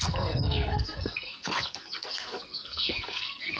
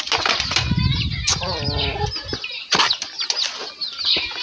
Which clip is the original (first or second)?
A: second